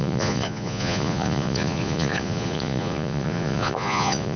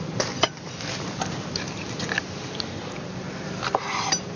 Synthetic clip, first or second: first